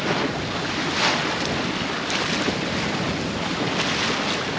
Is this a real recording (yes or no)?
yes